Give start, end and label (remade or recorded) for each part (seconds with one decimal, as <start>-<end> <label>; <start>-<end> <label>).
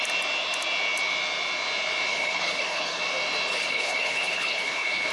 0.0-2.1 recorded; 2.1-3.0 remade; 3.0-3.5 recorded; 3.5-5.1 remade